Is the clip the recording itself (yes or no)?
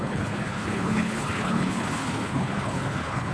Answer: no